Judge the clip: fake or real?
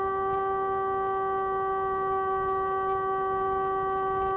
real